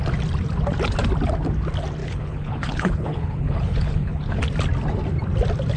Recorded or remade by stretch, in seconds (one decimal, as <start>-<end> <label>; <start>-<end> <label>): 0.0-2.0 recorded; 2.0-4.4 remade; 4.4-5.8 recorded